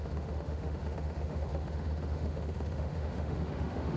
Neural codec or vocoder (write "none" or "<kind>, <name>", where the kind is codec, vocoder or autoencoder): autoencoder, DAC-VAE